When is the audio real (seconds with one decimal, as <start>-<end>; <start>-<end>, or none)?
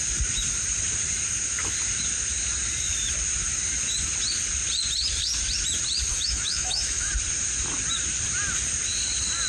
0.0-6.1; 7.1-9.5